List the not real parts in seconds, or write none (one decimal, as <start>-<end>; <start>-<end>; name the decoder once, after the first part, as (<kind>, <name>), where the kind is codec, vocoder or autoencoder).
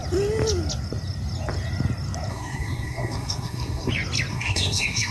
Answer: 2.3-3.9 (codec, SNAC); 4.3-5.1